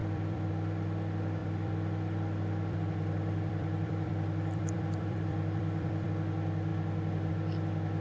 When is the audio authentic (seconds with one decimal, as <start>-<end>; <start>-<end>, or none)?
0.5-1.4; 6.1-8.0